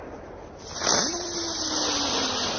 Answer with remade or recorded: recorded